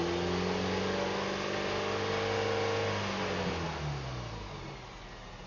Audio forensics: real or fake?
real